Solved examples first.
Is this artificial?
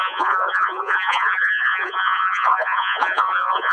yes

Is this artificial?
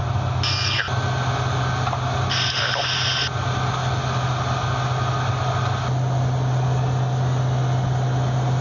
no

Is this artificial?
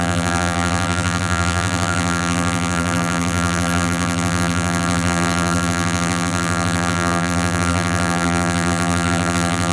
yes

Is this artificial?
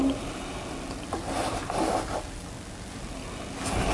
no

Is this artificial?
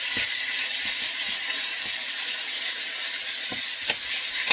no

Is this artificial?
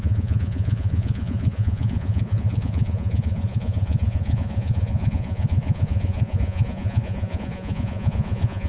yes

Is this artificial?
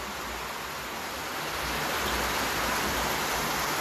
no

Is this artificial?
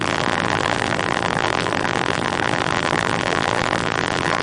yes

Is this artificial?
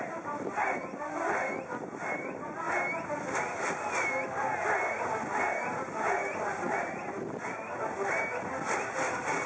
no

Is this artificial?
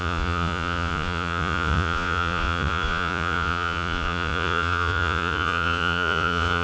yes